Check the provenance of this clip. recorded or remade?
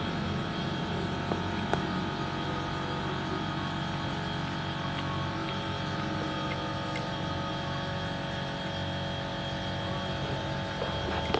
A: recorded